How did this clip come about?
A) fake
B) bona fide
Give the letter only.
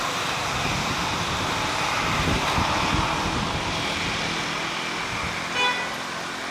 B